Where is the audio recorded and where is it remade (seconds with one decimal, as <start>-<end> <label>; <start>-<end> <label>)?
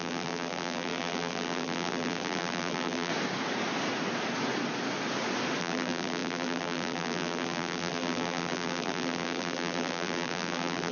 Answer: 0.0-3.1 remade; 3.1-5.6 recorded; 5.6-10.9 remade